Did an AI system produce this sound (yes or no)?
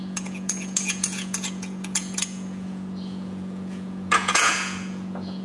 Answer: yes